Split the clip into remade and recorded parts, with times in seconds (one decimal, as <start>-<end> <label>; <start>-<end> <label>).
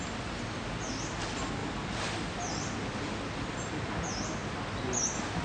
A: 0.0-5.4 recorded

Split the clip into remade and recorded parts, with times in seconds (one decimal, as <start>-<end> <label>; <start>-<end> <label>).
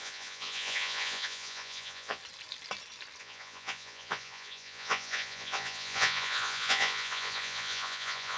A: 0.0-2.2 remade; 2.2-3.2 recorded; 3.2-8.4 remade